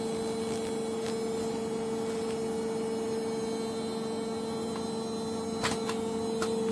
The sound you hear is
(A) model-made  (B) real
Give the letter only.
B